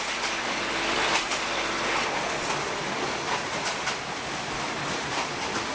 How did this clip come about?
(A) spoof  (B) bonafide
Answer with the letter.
B